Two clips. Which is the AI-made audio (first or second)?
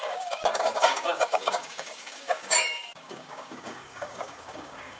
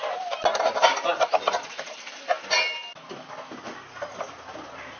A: first